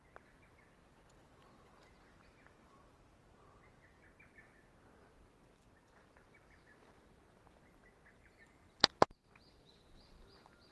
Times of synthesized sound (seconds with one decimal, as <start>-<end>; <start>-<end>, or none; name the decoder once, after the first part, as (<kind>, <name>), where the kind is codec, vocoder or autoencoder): 8.1-8.9 (vocoder, BigVGAN v2)